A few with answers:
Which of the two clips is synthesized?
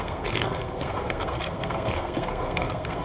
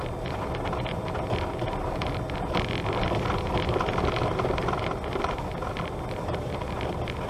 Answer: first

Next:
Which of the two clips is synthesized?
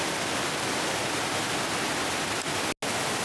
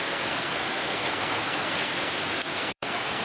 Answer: second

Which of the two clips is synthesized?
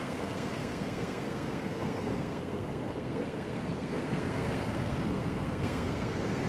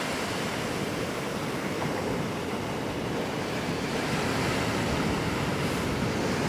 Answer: first